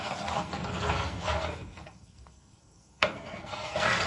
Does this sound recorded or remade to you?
remade